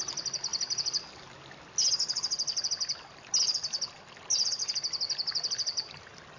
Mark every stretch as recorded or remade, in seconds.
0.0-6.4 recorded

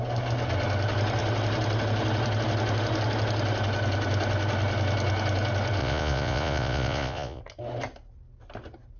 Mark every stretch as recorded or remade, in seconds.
0.0-5.8 recorded; 5.8-7.4 remade; 7.4-9.0 recorded

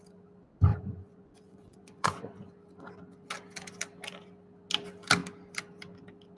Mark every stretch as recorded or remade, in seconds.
0.0-0.7 recorded; 0.7-2.5 remade; 2.5-6.4 recorded